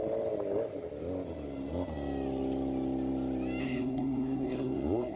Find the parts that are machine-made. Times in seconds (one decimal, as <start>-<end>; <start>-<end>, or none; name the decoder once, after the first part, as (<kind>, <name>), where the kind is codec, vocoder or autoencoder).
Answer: 3.6-5.2 (codec, SNAC)